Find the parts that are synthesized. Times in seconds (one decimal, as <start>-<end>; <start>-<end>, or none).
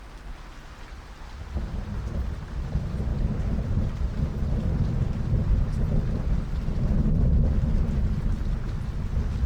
3.1-8.1